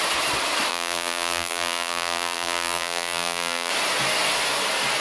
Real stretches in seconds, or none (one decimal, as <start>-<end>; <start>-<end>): 0.0-0.7; 3.7-5.0